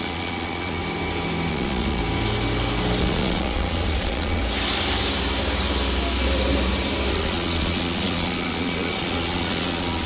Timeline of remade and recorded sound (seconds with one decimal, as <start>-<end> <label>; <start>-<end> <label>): 0.0-0.8 remade; 0.8-1.5 recorded; 1.5-2.0 remade; 2.0-3.0 recorded; 3.0-4.4 remade; 4.4-7.1 recorded; 7.1-10.1 remade